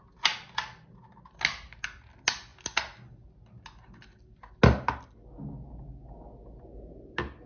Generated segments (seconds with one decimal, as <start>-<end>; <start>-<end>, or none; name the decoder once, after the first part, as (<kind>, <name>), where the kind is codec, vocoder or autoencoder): none